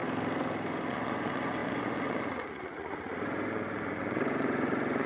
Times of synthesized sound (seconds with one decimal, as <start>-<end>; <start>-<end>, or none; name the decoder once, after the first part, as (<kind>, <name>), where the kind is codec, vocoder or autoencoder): 0.9-5.1 (vocoder, Vocos)